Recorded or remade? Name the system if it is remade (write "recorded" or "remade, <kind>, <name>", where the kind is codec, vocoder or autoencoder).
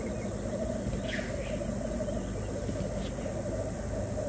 recorded